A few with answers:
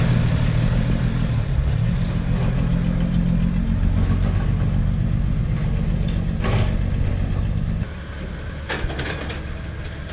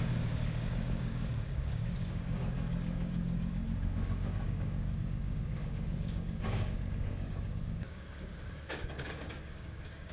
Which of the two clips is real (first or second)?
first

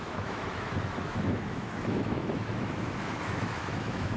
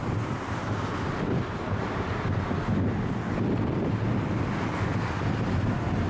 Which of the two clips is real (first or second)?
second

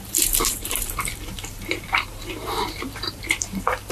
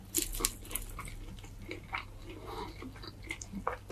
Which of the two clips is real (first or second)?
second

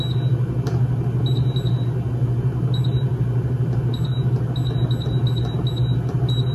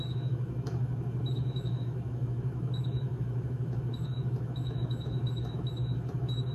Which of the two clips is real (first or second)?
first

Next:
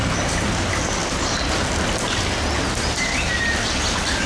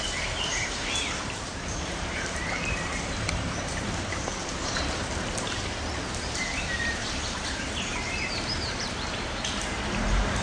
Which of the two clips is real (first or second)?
first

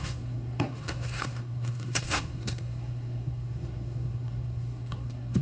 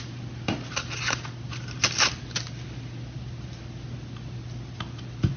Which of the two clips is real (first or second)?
second